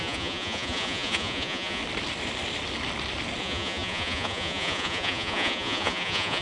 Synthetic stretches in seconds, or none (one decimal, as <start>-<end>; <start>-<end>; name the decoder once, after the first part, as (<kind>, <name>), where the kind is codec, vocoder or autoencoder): 0.0-1.8 (vocoder, Vocos); 3.4-6.4